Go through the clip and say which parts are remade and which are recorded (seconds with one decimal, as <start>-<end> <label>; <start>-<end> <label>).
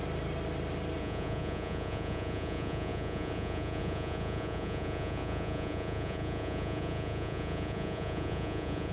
0.0-1.0 recorded; 1.0-8.9 remade